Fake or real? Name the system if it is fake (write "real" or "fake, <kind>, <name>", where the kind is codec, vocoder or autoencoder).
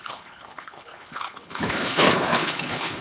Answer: fake, codec, HILCodec